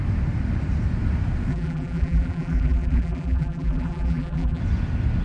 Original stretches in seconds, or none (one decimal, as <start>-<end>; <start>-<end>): 0.0-1.5; 4.6-5.2